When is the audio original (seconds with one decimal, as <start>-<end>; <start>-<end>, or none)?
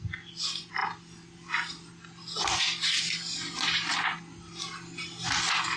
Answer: 0.0-5.8